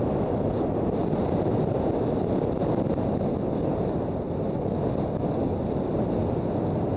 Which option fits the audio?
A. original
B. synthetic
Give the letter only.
A